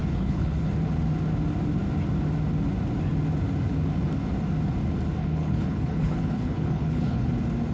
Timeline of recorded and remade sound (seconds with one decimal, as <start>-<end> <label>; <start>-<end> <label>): 0.0-0.7 remade; 0.7-5.2 recorded; 5.2-7.3 remade; 7.3-7.7 recorded